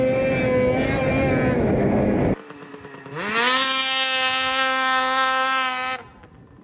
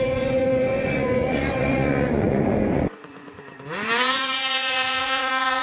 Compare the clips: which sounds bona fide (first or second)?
first